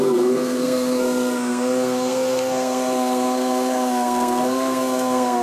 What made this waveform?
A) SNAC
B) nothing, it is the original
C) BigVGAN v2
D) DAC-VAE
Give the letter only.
A